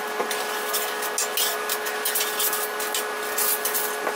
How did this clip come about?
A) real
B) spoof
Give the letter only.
A